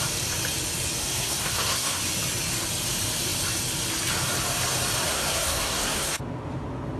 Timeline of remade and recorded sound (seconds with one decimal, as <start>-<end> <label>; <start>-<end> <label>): 0.0-1.0 recorded; 1.0-2.0 remade; 2.0-5.1 recorded; 5.1-6.2 remade; 6.2-7.0 recorded